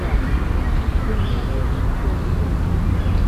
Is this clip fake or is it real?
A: real